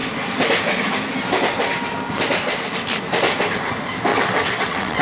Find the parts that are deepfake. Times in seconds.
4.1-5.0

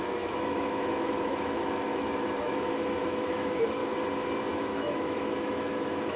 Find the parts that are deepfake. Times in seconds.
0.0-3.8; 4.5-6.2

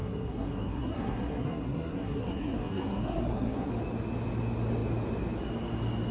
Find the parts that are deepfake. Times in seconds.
0.0-3.7

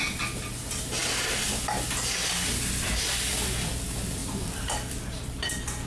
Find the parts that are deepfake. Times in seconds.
4.2-5.5